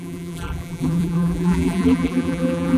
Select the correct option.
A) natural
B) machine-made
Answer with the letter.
B